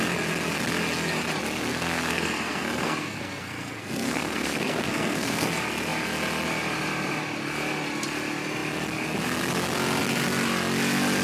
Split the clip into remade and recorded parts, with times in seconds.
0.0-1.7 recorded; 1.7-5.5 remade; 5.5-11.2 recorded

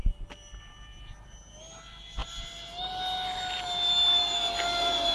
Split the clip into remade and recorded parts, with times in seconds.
0.0-5.1 recorded

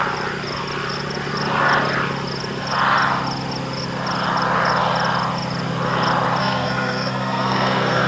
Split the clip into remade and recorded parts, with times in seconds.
0.0-6.4 recorded; 6.4-8.1 remade

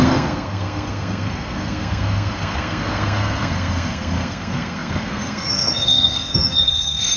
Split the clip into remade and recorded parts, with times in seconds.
0.0-7.2 remade

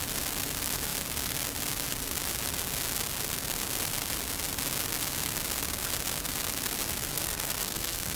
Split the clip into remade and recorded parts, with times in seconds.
0.0-7.1 recorded; 7.1-8.2 remade